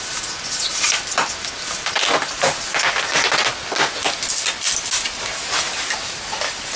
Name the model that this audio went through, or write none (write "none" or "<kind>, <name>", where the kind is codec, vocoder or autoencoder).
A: none